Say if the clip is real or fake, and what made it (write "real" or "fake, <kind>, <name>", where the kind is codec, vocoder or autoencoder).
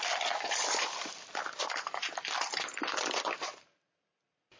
fake, vocoder, BigVGAN v2